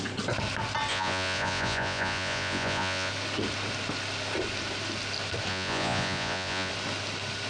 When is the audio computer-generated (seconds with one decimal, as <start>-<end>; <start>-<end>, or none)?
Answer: 0.9-3.1; 5.5-6.7